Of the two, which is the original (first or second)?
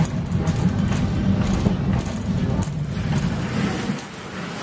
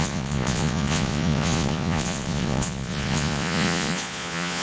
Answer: first